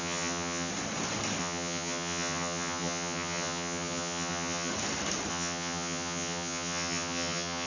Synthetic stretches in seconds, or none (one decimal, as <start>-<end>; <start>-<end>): 0.0-0.7; 1.4-4.7; 5.3-7.7